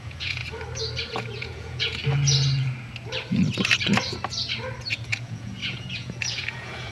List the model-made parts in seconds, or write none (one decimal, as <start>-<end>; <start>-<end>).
0.0-0.4; 1.1-2.0; 4.8-6.9